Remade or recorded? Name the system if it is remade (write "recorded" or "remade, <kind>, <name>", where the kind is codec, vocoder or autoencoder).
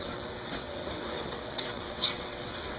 remade, vocoder, WaveNeXt